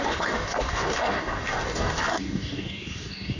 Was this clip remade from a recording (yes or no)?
yes